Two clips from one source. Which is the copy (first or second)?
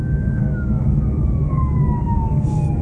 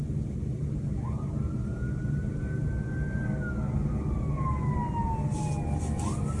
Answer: first